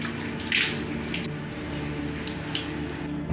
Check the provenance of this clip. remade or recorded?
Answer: recorded